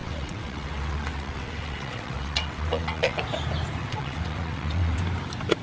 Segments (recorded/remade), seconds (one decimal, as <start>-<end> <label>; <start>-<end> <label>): 0.0-3.2 remade; 3.2-3.8 recorded; 3.8-5.0 remade; 5.0-5.6 recorded